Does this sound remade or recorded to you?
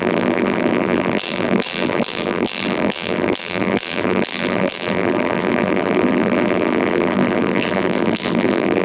remade